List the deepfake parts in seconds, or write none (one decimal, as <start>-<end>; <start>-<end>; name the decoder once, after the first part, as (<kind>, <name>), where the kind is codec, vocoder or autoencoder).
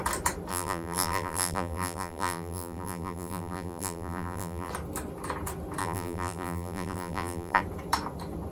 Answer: 0.5-4.7 (vocoder, BigVGAN v2); 5.8-7.6